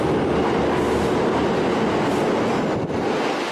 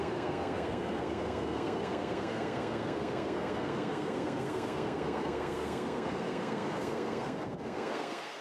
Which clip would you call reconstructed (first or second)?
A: second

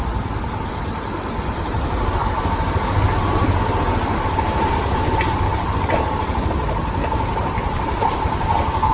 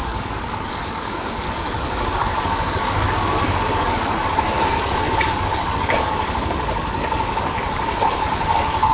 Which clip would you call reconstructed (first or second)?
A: second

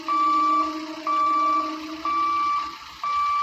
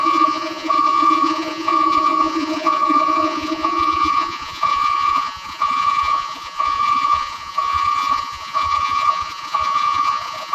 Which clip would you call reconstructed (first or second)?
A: second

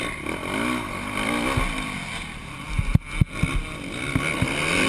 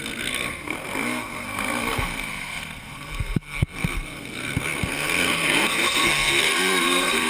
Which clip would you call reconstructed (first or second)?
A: second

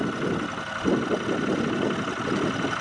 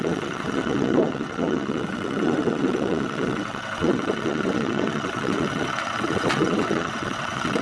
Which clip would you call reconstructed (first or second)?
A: second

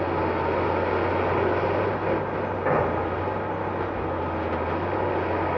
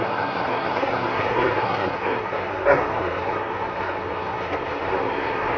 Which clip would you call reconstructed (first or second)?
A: second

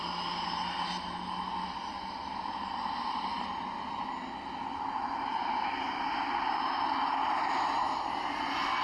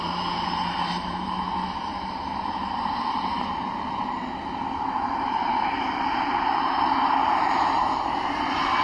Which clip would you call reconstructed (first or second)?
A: second